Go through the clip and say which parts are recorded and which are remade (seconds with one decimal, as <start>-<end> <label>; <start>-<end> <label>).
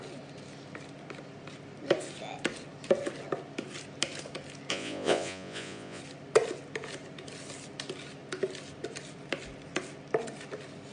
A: 0.0-4.7 recorded; 4.7-6.0 remade; 6.0-10.9 recorded